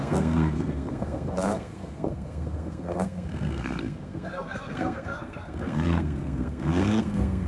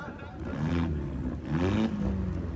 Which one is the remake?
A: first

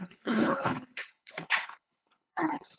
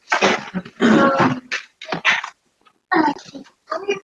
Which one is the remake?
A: first